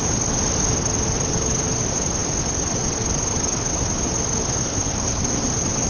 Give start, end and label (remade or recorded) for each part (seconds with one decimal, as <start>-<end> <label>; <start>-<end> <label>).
0.0-4.6 recorded; 4.6-5.5 remade; 5.5-5.9 recorded